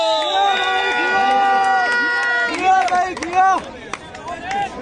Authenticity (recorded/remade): recorded